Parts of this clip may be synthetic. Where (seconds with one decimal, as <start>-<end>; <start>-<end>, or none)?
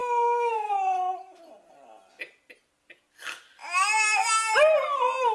0.0-0.5